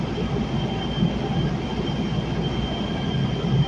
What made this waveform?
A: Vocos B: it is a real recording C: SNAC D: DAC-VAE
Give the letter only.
B